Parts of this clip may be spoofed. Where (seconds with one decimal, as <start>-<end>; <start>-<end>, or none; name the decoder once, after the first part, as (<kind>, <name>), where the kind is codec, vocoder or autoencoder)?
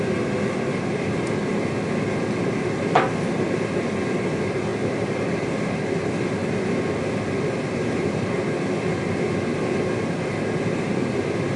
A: 4.7-5.8 (vocoder, BigVGAN v2)